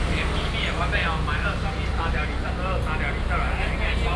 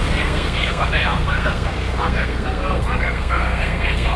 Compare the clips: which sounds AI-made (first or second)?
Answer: second